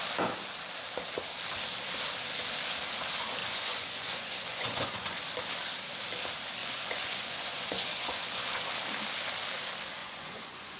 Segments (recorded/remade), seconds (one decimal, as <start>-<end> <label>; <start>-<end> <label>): 0.0-3.4 recorded; 3.4-5.2 remade; 5.2-6.6 recorded; 6.6-8.6 remade; 8.6-10.0 recorded; 10.0-10.8 remade

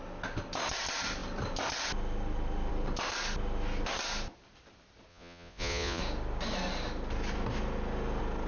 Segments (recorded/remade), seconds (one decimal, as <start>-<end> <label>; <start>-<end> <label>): 0.0-5.1 recorded; 5.1-6.0 remade; 6.0-8.5 recorded

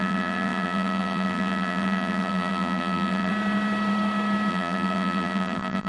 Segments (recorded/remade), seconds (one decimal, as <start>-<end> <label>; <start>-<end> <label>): 0.0-3.3 remade; 3.3-4.5 recorded; 4.5-5.9 remade